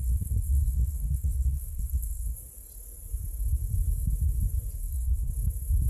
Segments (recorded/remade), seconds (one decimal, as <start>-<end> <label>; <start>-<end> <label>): 0.0-2.4 remade; 2.4-4.8 recorded; 4.8-5.3 remade; 5.3-5.9 recorded